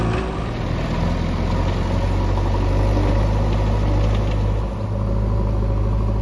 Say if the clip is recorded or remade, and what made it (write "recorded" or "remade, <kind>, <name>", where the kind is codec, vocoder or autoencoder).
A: recorded